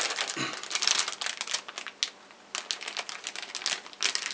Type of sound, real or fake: real